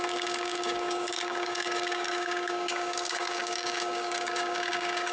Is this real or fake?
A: fake